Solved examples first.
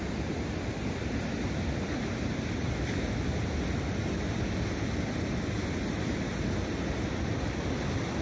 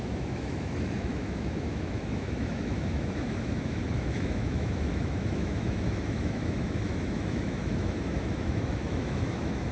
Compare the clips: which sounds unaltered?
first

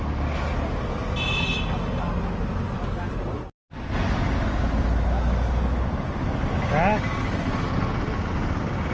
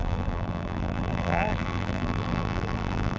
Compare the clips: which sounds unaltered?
first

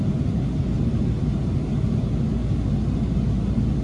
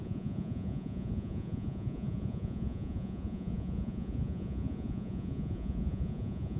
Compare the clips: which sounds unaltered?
first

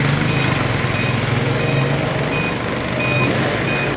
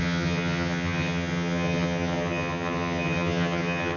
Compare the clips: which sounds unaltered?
first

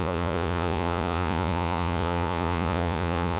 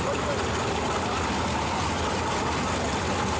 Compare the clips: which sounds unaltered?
second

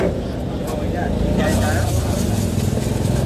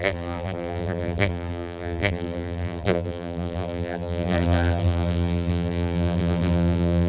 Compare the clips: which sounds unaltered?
first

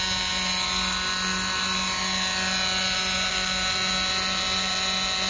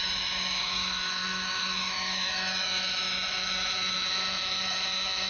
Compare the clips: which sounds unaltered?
first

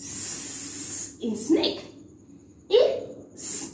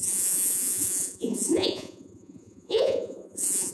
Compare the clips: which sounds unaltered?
first